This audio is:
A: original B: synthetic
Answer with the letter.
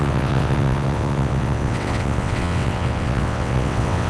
B